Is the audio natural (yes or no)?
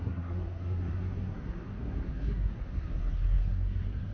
no